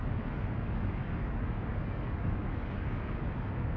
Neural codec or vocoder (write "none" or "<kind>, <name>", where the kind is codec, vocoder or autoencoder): codec, DAC